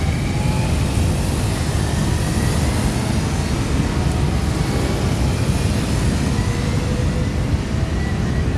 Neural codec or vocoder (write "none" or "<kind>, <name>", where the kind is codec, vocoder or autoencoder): none